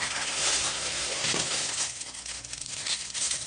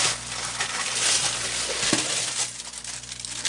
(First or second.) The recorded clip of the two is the second